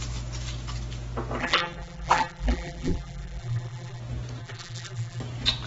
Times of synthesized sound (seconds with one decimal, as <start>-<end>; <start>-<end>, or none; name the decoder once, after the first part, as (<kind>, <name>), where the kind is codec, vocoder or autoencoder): 1.4-4.0 (vocoder, BigVGAN v2); 4.4-5.2